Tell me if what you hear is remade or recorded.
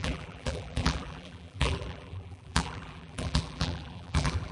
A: remade